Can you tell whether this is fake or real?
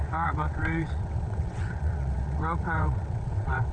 fake